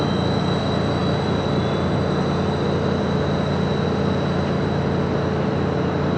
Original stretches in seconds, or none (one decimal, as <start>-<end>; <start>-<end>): 0.0-6.2